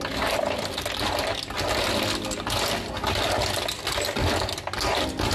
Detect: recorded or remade recorded